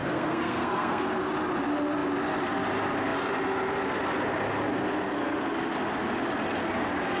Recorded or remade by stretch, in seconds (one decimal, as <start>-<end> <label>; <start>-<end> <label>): 0.0-1.0 remade; 1.0-7.2 recorded